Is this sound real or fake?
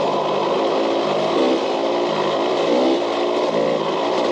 real